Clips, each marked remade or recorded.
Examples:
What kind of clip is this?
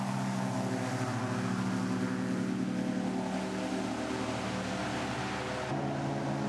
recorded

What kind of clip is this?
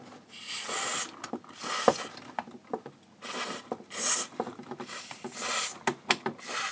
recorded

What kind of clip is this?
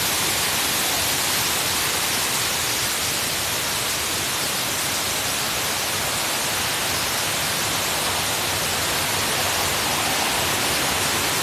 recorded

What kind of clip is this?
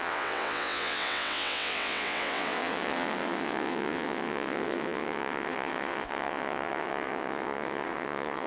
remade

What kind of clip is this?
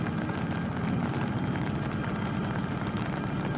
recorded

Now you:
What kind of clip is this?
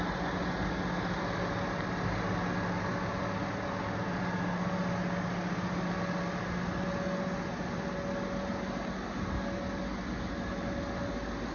recorded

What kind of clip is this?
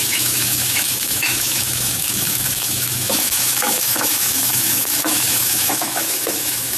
remade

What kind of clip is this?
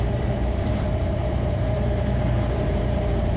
remade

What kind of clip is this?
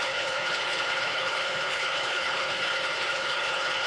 remade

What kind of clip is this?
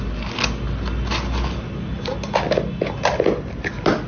recorded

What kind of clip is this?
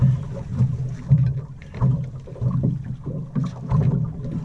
recorded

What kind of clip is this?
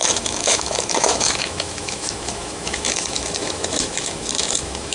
remade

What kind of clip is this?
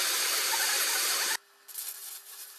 recorded